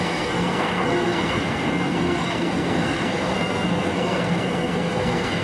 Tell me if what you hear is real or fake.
fake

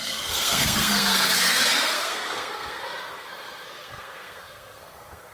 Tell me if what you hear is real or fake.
fake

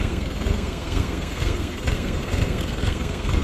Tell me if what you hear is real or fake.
fake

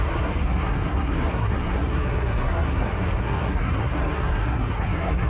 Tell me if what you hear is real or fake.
fake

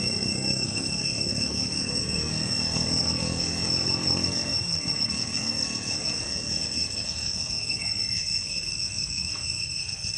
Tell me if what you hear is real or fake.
fake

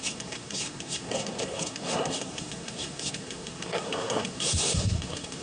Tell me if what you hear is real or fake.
fake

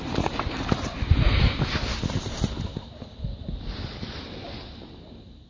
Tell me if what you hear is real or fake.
real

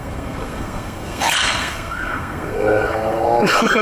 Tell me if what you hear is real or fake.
fake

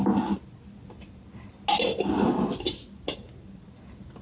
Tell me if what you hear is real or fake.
real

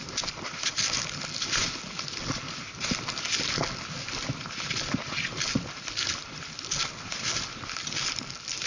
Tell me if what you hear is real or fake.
real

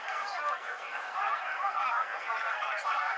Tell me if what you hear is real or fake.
fake